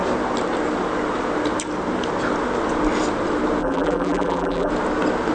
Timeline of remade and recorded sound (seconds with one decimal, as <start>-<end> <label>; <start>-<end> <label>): 0.0-3.6 recorded; 3.6-4.7 remade; 4.7-5.3 recorded

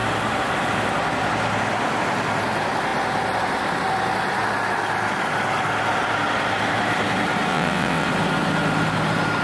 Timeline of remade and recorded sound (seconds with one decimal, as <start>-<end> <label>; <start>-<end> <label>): 0.0-7.5 recorded; 7.5-8.1 remade; 8.1-9.4 recorded